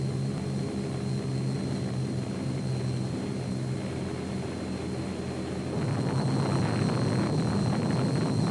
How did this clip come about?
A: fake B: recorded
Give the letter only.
B